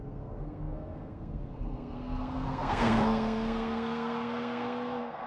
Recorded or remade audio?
remade